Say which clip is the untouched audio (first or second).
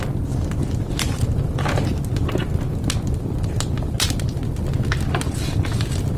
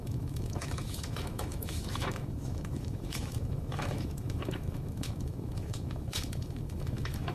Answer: first